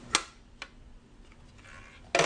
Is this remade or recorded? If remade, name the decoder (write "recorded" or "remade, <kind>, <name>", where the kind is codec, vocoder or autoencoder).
recorded